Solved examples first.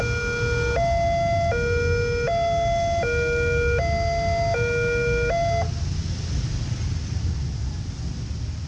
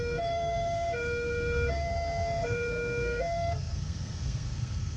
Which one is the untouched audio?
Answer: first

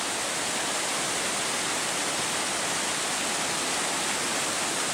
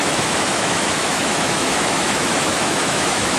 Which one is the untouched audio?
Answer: first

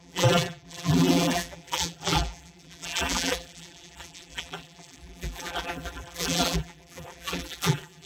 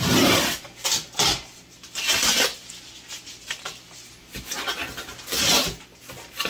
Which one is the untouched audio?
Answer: second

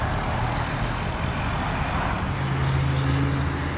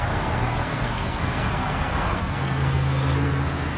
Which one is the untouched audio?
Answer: first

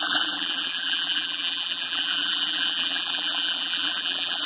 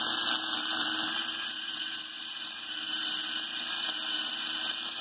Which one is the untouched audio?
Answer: second